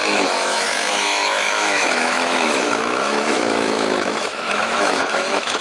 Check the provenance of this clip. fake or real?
fake